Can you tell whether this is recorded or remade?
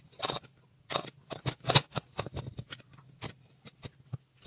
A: recorded